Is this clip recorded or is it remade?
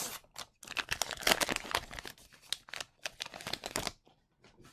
recorded